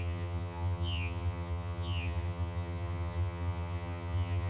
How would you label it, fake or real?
fake